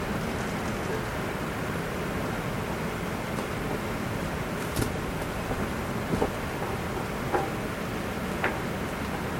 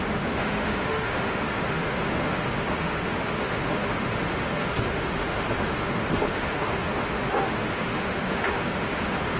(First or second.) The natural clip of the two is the first